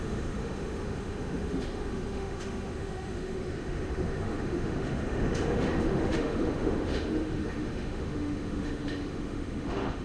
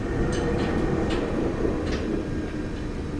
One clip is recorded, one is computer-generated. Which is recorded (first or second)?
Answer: second